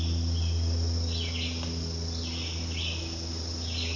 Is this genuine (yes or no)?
yes